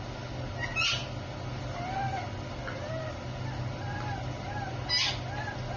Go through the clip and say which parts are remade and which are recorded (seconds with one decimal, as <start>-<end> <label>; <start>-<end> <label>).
0.0-5.8 recorded